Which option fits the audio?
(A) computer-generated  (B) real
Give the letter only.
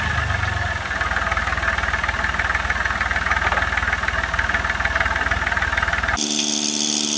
B